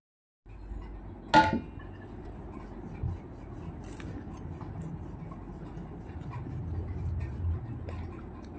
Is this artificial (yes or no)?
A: no